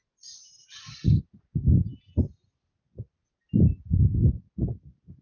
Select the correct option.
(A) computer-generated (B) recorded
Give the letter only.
B